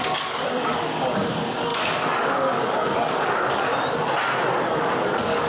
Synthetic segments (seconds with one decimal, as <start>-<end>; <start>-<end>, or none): 0.0-3.7; 4.7-5.5